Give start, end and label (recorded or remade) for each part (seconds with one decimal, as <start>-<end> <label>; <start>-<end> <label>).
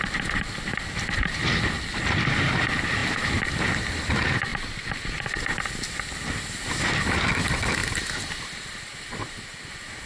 0.0-10.1 recorded